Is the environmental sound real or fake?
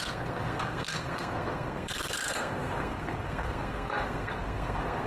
fake